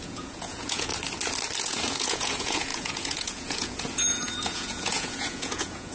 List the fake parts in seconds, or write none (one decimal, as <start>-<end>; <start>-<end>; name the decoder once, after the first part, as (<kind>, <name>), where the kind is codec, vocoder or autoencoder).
0.0-0.9 (vocoder, Vocos); 1.6-5.9